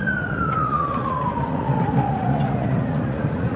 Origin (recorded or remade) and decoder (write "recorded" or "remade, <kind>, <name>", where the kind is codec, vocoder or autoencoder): remade, vocoder, Vocos